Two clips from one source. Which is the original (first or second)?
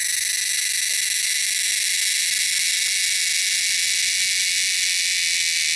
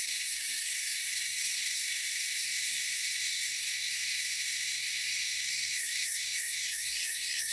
first